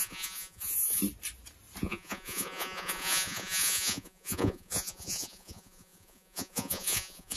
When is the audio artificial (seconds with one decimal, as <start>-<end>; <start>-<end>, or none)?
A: 0.0-1.0; 1.8-7.4